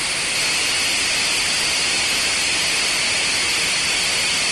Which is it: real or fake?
real